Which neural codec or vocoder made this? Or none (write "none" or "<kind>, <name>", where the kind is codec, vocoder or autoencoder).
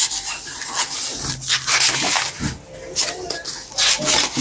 none